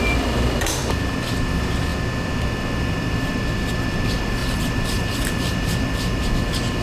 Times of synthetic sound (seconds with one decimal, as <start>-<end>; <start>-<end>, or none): 4.4-6.2